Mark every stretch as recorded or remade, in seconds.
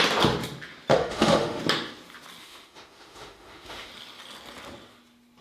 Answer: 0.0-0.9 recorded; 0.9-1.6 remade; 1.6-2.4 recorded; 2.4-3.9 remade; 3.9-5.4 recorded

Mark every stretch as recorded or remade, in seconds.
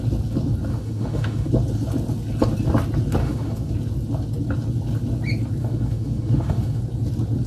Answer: 0.0-0.7 recorded; 0.7-1.5 remade; 1.5-3.2 recorded; 3.2-3.7 remade; 3.7-5.6 recorded; 5.6-6.8 remade; 6.8-7.5 recorded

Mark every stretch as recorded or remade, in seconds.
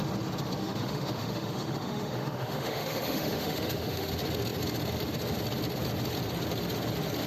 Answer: 0.0-0.6 recorded; 0.6-4.1 remade; 4.1-7.3 recorded